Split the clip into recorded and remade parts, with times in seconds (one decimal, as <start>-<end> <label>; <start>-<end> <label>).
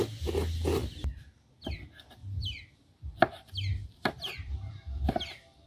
0.0-0.8 recorded; 0.8-1.6 remade; 1.6-2.2 recorded; 2.2-5.7 remade